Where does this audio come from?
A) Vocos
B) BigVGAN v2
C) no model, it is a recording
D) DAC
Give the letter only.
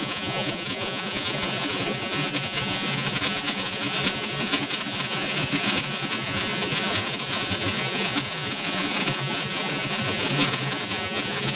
A